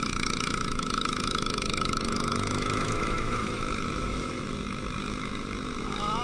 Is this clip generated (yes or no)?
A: yes